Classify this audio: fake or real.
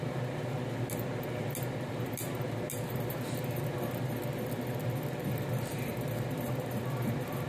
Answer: real